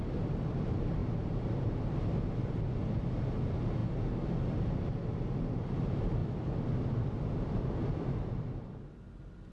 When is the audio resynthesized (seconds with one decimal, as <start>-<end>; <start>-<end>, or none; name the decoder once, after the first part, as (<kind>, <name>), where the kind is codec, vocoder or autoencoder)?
0.0-1.0 (vocoder, BigVGAN v2); 2.5-3.8; 5.6-6.2; 7.0-9.5